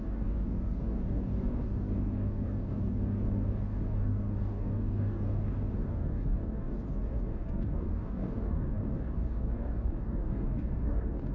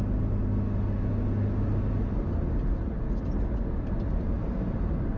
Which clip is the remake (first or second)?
first